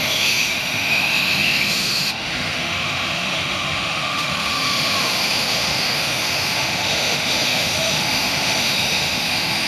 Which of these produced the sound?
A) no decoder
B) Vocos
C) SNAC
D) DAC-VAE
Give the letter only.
D